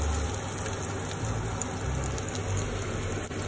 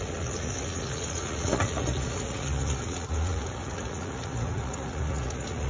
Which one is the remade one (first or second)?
second